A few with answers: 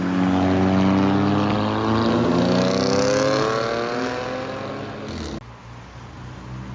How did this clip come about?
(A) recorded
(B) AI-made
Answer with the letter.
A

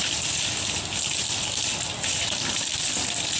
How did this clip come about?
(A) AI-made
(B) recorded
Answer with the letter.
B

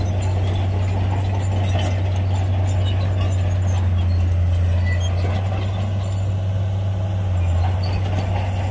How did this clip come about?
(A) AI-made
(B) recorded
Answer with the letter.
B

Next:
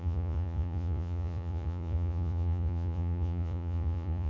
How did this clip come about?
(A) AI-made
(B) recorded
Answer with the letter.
A